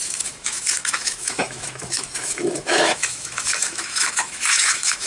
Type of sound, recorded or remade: remade